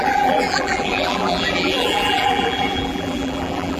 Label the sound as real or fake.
fake